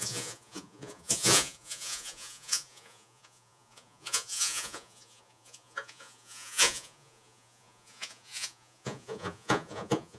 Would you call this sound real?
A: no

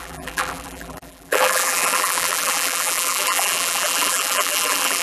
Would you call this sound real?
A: no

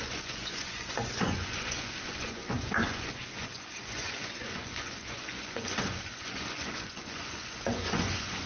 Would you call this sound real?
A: no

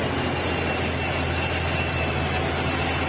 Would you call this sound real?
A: yes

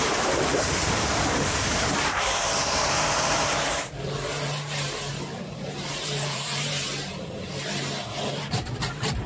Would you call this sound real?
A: no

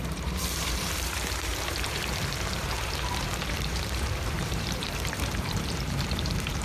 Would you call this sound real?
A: no